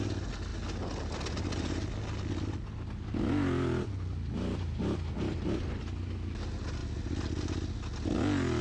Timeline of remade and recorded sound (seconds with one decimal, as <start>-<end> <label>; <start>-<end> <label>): 0.0-8.6 recorded